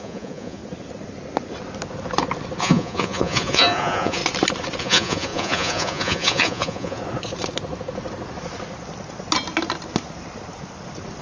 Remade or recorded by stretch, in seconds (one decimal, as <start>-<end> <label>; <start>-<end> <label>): 0.0-0.6 remade; 0.6-2.6 recorded; 2.6-4.2 remade; 4.2-4.8 recorded; 4.8-7.0 remade; 7.0-11.2 recorded